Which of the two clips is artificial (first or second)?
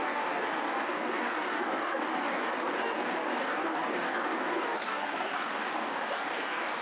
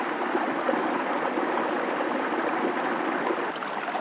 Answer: first